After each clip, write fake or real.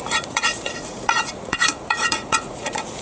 fake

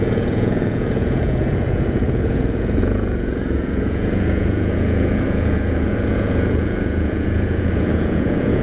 fake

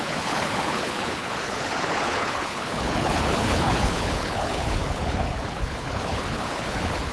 fake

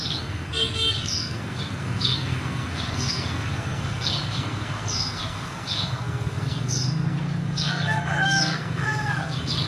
fake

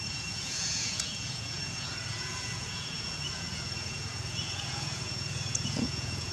fake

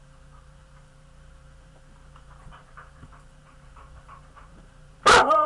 fake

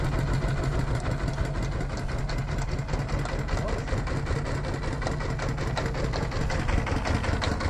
real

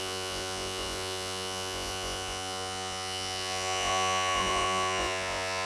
fake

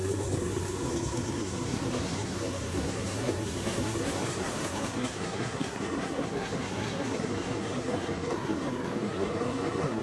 fake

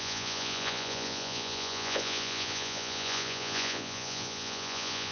fake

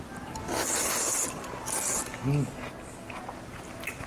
real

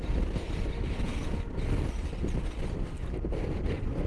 real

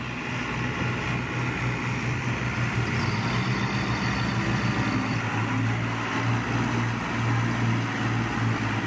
real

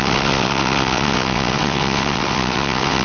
fake